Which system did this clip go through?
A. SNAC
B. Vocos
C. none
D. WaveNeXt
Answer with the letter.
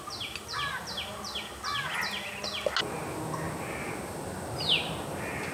C